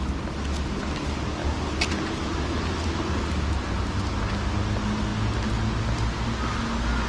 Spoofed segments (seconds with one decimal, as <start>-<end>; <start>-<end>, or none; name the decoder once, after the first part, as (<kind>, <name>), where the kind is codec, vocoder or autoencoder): none